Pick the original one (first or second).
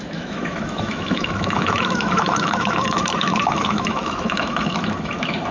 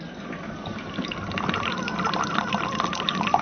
second